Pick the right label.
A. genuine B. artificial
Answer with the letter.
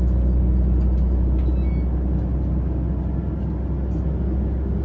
A